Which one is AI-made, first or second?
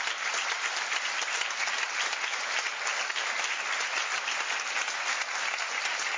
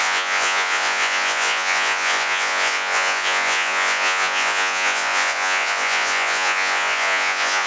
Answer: second